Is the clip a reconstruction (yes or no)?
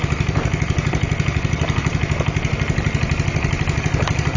no